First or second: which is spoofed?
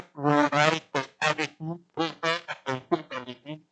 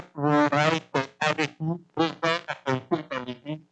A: first